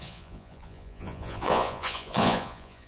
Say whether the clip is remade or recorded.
remade